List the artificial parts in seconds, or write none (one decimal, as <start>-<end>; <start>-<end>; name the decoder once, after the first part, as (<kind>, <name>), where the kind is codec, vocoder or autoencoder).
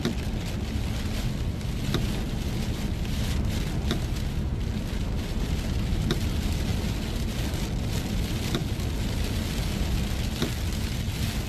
none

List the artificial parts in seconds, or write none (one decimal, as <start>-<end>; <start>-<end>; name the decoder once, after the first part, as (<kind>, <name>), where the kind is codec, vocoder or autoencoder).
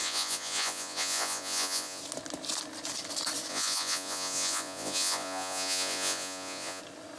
0.0-2.0 (vocoder, Vocos); 3.5-6.8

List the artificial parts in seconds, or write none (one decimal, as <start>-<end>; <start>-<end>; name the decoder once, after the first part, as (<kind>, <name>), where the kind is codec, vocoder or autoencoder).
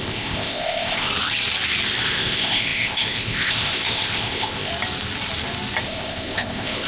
0.0-1.1 (codec, ZipCodec); 2.0-4.7; 5.8-6.9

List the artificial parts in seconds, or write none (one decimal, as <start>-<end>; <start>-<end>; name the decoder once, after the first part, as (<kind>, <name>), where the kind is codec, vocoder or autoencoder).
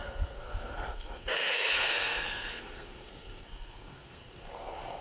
0.0-5.0 (codec, SNAC)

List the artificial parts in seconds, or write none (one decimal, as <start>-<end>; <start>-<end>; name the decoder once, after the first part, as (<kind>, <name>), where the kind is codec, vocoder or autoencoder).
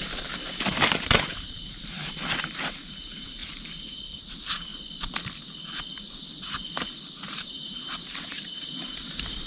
0.0-3.4 (vocoder, BigVGAN v2); 4.3-4.7; 7.3-9.5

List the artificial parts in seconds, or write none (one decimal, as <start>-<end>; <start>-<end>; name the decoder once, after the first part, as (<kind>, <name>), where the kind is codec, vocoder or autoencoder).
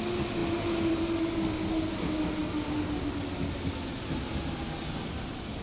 none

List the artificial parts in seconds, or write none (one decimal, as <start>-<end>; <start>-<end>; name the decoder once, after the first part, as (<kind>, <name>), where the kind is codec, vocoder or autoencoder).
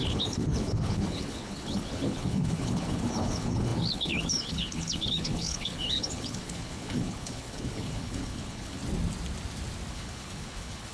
0.0-8.8 (codec, HILCodec); 9.9-10.9